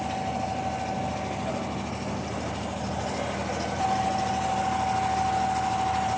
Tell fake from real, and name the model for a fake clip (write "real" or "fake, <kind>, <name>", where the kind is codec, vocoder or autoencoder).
real